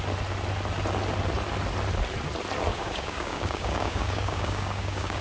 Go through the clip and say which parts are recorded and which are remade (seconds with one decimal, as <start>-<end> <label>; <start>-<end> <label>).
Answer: 0.0-2.7 recorded; 2.7-5.2 remade